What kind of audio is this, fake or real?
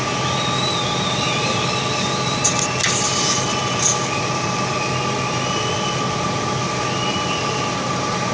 real